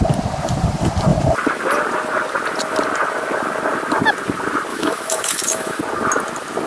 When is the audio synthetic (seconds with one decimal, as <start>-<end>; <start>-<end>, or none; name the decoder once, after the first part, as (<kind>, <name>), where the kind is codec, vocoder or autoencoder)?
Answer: 4.7-5.8 (autoencoder, DAC-VAE)